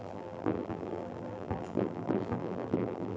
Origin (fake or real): fake